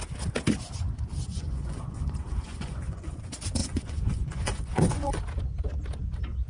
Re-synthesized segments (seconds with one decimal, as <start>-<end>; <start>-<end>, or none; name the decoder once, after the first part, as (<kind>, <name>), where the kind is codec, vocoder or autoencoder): 1.3-3.2 (vocoder, Vocos); 3.6-5.2